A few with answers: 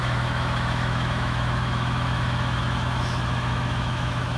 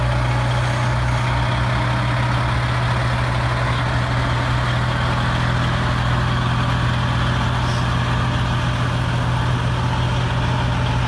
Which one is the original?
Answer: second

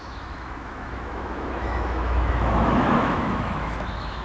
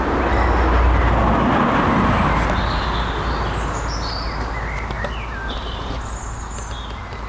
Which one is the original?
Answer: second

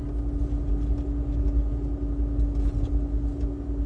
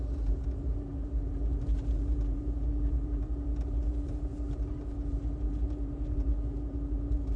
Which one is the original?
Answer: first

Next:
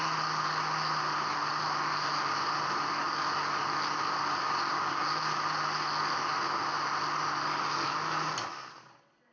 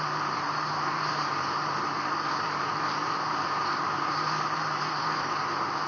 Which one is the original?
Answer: first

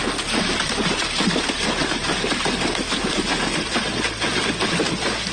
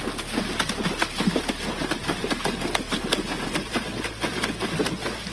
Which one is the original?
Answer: second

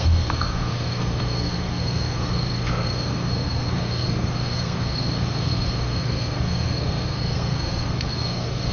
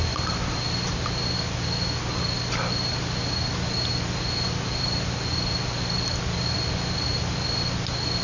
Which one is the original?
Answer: second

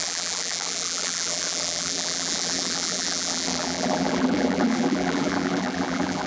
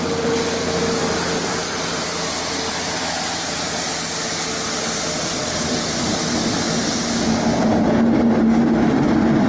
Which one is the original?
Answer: second